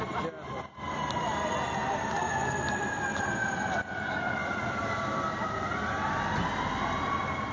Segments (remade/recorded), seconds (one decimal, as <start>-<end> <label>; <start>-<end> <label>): 0.0-7.5 recorded